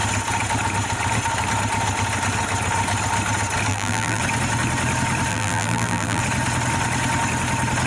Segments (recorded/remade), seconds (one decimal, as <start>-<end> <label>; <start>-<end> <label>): 0.0-3.7 recorded; 3.7-4.2 remade; 4.2-5.3 recorded; 5.3-6.2 remade; 6.2-7.9 recorded